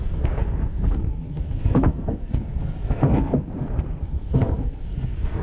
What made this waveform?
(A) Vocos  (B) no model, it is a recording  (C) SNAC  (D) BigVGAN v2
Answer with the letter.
C